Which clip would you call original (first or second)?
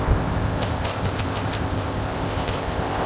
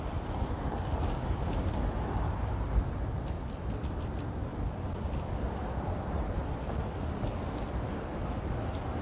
second